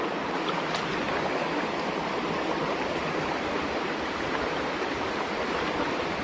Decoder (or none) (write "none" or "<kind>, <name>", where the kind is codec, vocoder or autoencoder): none